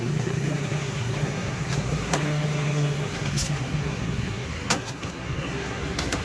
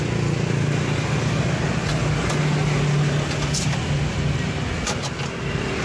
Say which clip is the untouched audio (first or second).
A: second